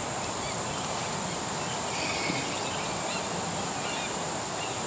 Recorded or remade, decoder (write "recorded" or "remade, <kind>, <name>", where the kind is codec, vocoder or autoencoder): recorded